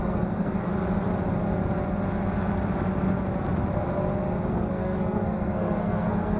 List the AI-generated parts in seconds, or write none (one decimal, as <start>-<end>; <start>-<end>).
0.0-0.7; 4.5-6.4